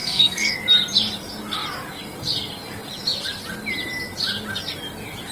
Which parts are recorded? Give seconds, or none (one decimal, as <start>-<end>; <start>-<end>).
0.5-5.3